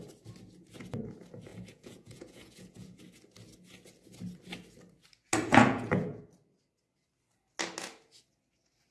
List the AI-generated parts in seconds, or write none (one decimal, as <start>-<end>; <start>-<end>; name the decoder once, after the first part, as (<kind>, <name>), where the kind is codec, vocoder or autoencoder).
1.5-3.0 (vocoder, Vocos); 5.5-6.2